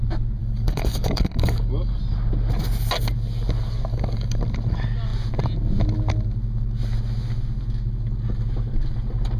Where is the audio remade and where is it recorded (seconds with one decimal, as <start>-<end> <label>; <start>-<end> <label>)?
0.0-0.4 recorded; 0.4-2.0 remade; 2.0-3.9 recorded; 3.9-4.4 remade; 4.4-9.4 recorded